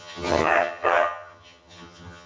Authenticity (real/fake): fake